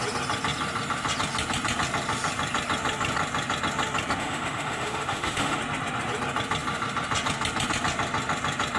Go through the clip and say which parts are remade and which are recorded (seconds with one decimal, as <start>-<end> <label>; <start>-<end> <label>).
0.0-4.2 recorded; 4.2-5.6 remade; 5.6-8.8 recorded